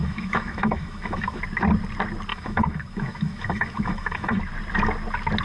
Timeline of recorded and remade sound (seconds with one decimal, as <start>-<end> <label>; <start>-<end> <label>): 0.0-1.4 remade; 1.4-2.3 recorded; 2.3-4.4 remade; 4.4-5.4 recorded